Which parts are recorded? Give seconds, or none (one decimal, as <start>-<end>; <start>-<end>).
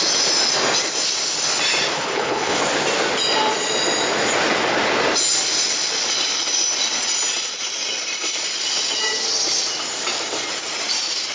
0.0-1.9; 2.6-11.3